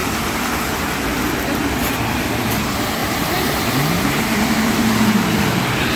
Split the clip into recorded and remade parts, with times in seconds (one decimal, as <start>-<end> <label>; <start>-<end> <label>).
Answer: 0.0-3.0 recorded; 3.0-4.0 remade; 4.0-6.0 recorded